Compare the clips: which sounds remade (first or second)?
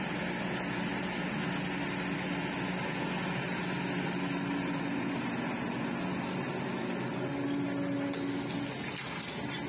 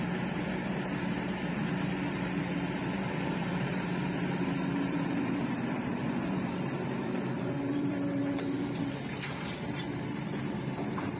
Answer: second